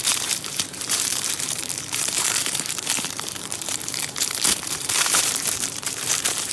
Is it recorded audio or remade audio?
remade